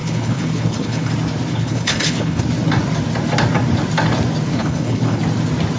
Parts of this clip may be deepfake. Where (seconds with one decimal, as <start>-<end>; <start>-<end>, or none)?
0.0-1.1; 1.5-2.4; 4.5-5.2